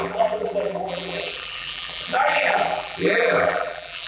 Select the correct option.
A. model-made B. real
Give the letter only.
A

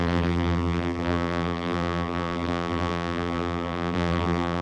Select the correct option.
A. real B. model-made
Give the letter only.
B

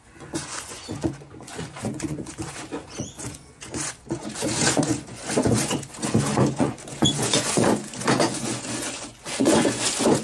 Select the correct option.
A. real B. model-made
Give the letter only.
B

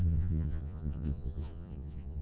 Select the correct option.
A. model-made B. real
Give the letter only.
A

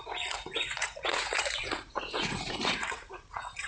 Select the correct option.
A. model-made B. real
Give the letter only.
A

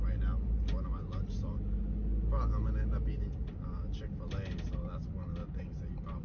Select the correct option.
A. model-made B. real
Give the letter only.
B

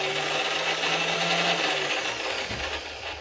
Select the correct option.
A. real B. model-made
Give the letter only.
A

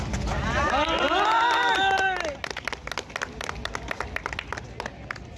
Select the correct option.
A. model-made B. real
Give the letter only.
B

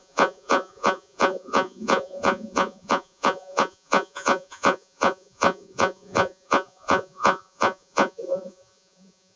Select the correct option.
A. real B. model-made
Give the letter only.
B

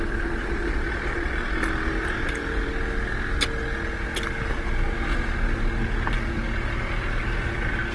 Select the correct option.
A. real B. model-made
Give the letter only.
A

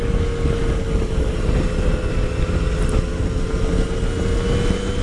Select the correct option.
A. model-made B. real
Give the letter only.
B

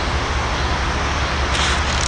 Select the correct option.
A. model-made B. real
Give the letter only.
B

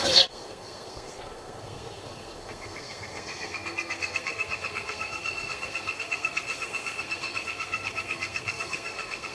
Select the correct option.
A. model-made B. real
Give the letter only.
A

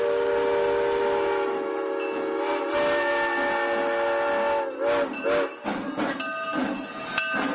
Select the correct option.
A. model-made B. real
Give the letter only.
B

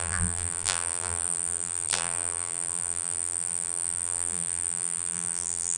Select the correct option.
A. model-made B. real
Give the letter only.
A